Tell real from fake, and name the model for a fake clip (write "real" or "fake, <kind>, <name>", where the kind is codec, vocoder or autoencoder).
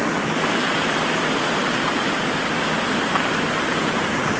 real